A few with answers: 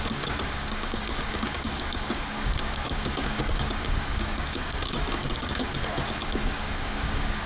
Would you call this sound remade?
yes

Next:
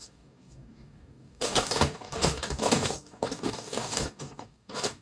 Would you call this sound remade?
yes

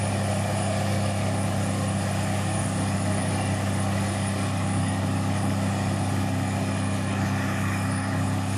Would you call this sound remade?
yes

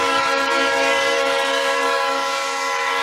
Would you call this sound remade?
yes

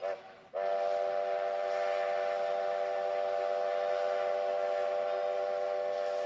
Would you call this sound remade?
no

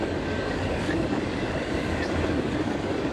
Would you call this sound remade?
yes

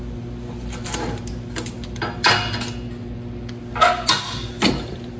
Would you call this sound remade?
no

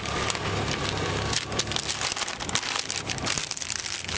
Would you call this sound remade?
no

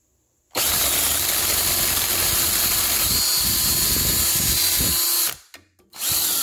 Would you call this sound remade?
no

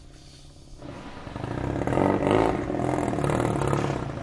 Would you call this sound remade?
no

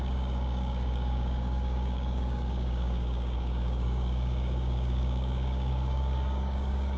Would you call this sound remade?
yes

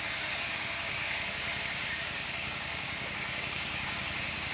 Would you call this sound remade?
yes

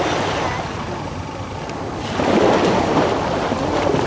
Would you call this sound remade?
no